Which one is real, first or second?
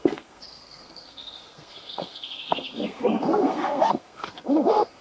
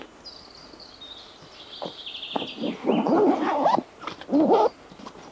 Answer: second